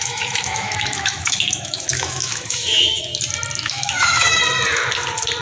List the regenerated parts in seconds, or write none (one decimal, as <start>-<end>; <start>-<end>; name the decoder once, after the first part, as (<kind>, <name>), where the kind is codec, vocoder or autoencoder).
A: 0.0-3.1 (autoencoder, DAC-VAE); 3.6-4.4